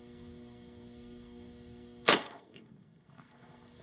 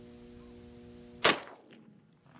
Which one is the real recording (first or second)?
second